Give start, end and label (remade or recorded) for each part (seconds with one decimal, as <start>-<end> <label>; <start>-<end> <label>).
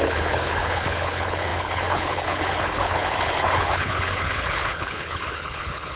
0.0-6.0 remade